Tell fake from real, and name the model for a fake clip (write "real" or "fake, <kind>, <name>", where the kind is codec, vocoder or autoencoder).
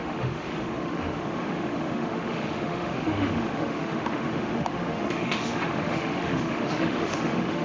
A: fake, autoencoder, DAC-VAE